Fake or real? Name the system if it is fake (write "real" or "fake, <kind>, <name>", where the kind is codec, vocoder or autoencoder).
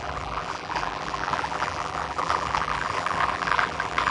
fake, vocoder, BigVGAN v2